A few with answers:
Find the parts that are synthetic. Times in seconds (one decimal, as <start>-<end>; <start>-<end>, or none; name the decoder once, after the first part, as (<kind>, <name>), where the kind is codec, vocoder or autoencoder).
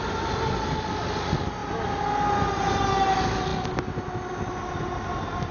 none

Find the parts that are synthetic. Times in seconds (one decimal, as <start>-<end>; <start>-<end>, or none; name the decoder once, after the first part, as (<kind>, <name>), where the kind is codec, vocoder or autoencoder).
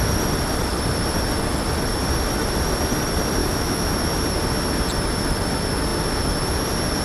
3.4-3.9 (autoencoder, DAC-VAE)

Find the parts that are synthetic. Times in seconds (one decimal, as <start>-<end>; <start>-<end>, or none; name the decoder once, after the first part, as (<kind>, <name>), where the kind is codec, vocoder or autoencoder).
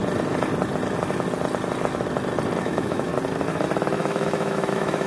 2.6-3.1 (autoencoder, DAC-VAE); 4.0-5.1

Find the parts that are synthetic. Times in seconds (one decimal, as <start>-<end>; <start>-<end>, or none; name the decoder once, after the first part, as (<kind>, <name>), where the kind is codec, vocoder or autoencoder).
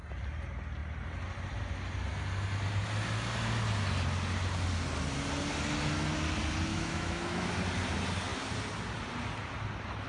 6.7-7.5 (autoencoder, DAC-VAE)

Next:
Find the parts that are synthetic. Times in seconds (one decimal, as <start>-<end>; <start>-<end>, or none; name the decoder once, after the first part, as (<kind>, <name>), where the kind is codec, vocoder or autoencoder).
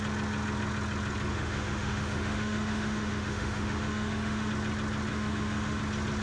1.3-4.5 (autoencoder, DAC-VAE); 5.1-5.8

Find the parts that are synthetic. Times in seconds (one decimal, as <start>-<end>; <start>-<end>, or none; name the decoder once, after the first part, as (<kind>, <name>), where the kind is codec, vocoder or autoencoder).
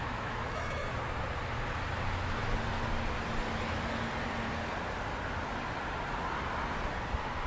0.0-0.9 (autoencoder, DAC-VAE)